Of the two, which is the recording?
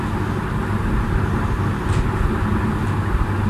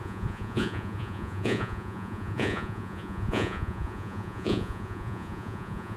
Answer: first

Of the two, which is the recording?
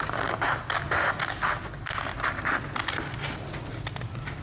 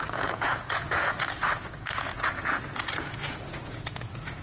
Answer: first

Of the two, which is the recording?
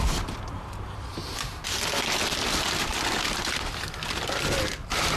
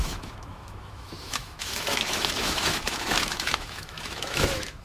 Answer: first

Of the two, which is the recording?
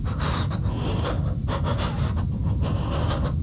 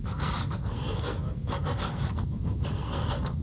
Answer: first